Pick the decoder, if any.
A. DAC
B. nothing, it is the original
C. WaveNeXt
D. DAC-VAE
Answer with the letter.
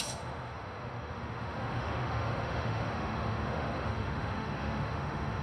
D